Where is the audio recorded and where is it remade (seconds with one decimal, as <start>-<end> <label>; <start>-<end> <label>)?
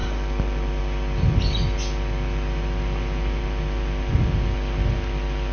0.0-5.5 recorded